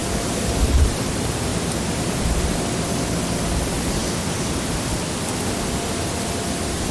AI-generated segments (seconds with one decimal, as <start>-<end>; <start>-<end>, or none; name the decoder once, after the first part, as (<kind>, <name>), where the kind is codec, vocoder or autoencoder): 0.0-0.9 (codec, DAC)